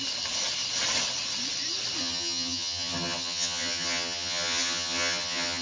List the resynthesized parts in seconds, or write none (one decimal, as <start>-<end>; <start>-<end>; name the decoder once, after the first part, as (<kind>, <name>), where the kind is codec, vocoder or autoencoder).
2.0-5.6 (vocoder, HiFi-GAN)